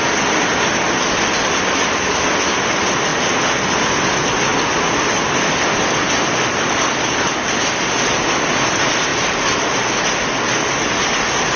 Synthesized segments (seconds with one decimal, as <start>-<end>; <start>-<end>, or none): none